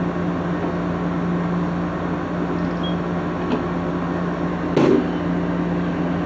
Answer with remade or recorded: recorded